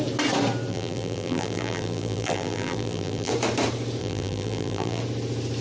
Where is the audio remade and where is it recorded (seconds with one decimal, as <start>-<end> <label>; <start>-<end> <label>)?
0.0-0.7 recorded; 0.7-3.3 remade; 3.3-4.0 recorded; 4.0-5.0 remade; 5.0-5.6 recorded